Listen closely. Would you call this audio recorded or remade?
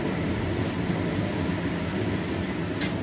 recorded